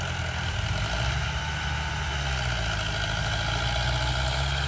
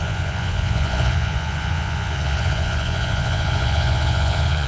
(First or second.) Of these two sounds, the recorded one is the first